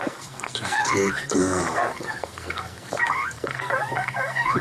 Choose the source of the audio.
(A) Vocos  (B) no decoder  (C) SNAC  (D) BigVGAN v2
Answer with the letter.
C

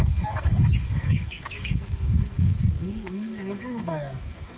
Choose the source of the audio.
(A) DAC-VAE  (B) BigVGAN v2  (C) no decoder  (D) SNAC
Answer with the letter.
D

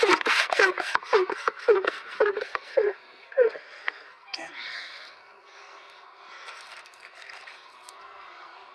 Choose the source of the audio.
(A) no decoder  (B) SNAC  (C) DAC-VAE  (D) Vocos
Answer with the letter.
B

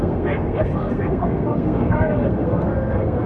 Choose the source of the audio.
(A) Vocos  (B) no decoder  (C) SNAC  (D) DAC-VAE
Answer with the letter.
C